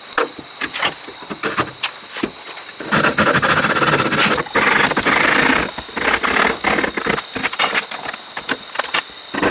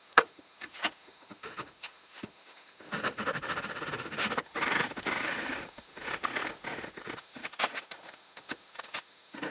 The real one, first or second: first